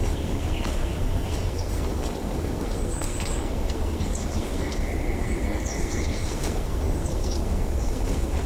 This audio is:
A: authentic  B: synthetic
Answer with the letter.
B